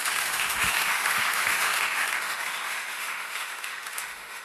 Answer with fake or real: fake